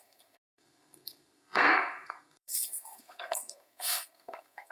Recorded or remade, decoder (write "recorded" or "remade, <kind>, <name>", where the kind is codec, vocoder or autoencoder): remade, codec, SNAC